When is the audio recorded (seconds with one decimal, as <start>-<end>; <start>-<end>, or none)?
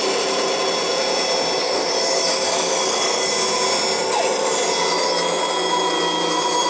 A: 0.0-1.6; 3.3-6.7